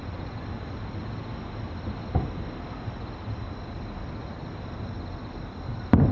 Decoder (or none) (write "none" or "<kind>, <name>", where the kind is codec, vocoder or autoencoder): none